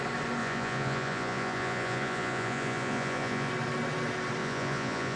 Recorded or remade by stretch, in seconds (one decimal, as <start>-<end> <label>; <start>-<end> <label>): 0.0-0.4 recorded; 0.4-3.5 remade; 3.5-4.4 recorded; 4.4-5.2 remade